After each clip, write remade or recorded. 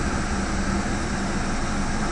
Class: recorded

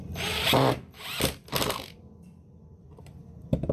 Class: recorded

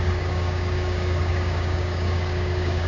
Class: remade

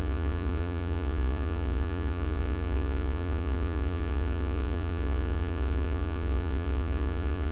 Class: remade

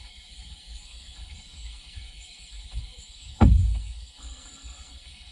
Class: remade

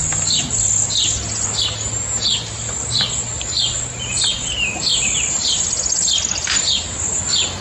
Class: recorded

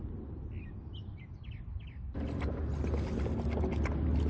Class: recorded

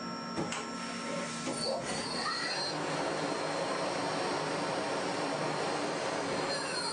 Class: recorded